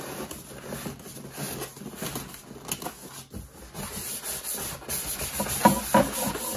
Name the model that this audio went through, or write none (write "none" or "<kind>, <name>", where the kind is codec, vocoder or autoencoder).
none